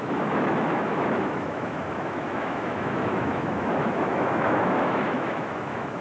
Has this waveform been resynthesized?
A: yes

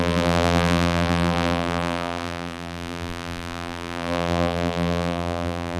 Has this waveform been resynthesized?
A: yes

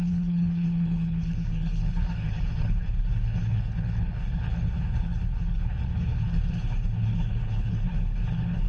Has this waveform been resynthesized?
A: yes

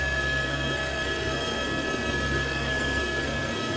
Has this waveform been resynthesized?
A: yes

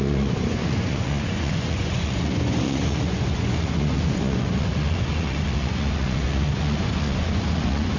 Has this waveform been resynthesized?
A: yes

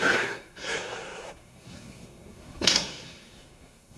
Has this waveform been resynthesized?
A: yes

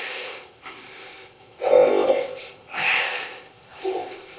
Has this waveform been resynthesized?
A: yes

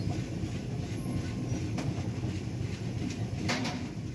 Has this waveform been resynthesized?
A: no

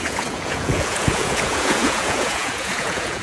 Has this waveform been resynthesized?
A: yes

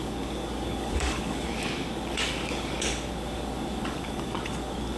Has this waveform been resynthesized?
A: yes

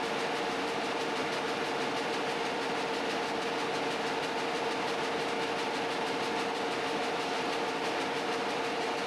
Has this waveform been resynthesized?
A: no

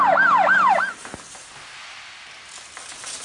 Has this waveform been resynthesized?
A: no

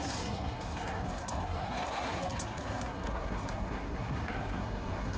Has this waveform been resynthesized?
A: yes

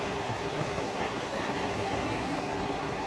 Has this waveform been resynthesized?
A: yes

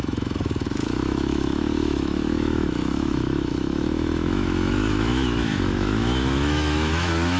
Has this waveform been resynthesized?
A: yes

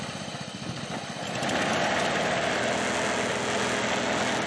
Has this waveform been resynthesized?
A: no